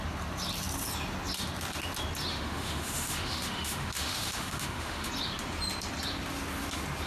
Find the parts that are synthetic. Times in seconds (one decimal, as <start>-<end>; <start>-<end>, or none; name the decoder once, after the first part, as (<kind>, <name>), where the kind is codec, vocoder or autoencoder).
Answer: 2.3-5.1 (autoencoder, DAC-VAE)